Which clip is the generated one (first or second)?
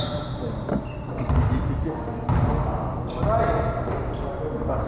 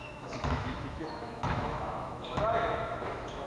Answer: second